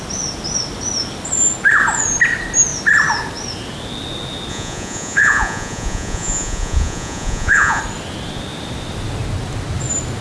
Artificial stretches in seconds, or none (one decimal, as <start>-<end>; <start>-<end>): 4.5-7.8